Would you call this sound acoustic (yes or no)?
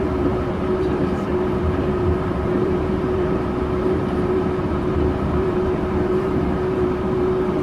no